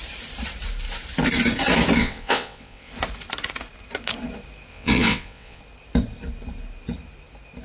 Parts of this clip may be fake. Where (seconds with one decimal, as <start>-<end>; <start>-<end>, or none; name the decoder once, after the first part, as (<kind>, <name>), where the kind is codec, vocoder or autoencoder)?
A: 2.0-2.9 (vocoder, WaveNeXt); 4.7-5.6